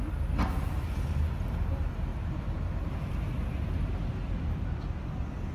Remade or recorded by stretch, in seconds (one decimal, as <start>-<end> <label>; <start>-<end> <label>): 0.0-5.5 recorded